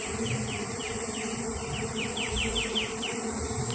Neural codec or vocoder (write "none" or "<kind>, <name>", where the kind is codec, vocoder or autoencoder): vocoder, BigVGAN v2